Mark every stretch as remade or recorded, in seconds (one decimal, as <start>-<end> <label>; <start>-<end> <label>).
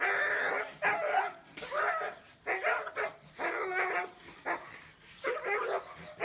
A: 0.0-6.2 recorded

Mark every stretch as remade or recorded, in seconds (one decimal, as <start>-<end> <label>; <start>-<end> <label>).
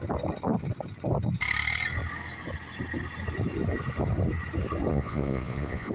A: 0.0-4.9 recorded; 4.9-5.9 remade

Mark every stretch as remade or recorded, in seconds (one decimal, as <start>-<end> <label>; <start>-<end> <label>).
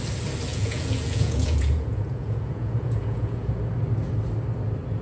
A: 0.0-0.5 recorded; 0.5-3.5 remade; 3.5-5.0 recorded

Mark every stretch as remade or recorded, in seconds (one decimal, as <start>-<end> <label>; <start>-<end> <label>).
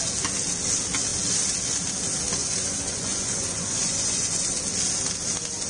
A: 0.0-2.4 recorded; 2.4-4.6 remade; 4.6-5.7 recorded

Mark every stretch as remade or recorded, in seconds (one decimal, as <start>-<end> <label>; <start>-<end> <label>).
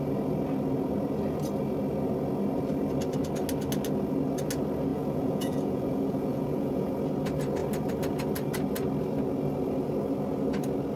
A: 0.0-4.9 recorded; 4.9-6.9 remade; 6.9-11.0 recorded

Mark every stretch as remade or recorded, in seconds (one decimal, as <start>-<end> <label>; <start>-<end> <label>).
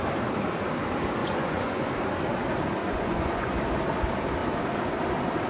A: 0.0-1.2 recorded; 1.2-1.9 remade; 1.9-2.8 recorded; 2.8-3.6 remade; 3.6-5.5 recorded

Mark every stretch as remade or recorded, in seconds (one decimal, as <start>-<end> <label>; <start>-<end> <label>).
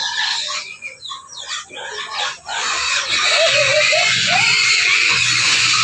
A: 0.0-5.8 remade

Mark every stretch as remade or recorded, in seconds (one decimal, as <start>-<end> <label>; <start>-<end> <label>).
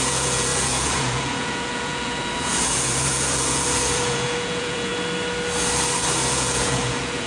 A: 0.0-4.9 remade; 4.9-6.3 recorded; 6.3-7.3 remade